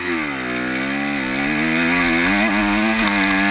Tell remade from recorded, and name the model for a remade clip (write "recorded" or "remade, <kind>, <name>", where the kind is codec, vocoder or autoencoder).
recorded